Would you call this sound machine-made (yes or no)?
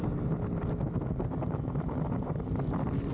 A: no